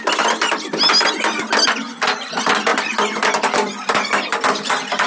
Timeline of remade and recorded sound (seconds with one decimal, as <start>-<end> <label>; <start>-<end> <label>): 0.0-5.1 recorded